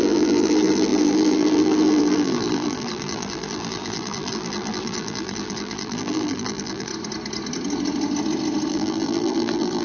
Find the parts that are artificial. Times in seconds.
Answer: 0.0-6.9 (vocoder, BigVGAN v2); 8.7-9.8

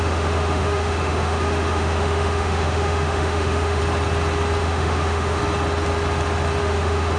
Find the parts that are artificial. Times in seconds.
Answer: 0.0-3.8 (autoencoder, DAC-VAE); 4.6-5.4; 6.6-7.2

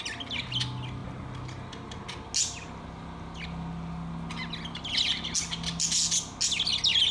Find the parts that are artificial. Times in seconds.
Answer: none